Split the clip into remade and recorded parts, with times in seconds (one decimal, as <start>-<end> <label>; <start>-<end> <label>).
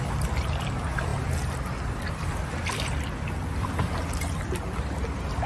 0.0-5.5 recorded